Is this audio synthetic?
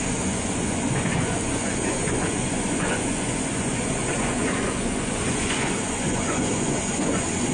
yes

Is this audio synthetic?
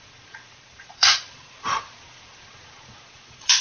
yes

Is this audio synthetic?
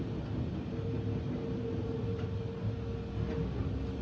no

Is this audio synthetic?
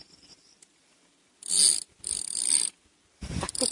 no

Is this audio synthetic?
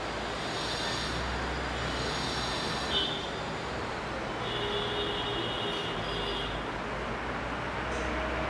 no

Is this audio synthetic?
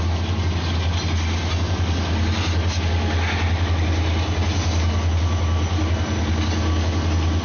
no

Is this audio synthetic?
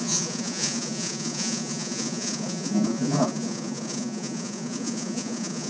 yes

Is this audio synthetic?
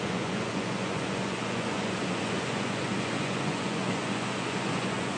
yes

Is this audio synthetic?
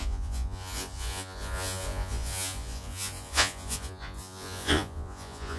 yes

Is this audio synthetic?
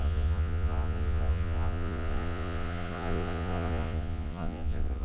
yes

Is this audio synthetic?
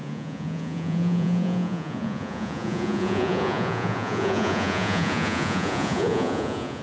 yes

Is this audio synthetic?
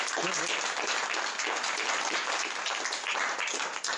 no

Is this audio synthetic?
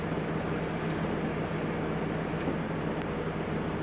no